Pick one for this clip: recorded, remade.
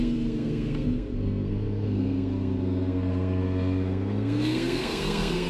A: remade